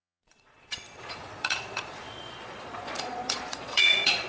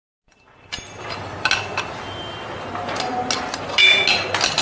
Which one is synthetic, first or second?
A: first